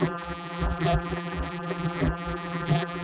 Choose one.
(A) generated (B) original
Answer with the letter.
A